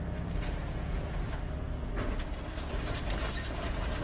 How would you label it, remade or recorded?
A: recorded